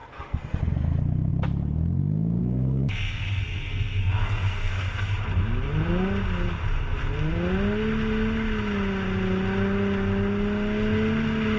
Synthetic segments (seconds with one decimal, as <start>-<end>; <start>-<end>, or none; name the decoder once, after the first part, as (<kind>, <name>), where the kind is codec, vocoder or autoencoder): 0.0-0.6 (codec, SNAC); 2.4-4.9